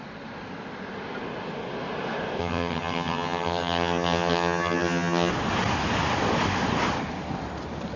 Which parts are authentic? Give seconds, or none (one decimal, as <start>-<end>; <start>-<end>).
0.0-2.4; 5.3-8.0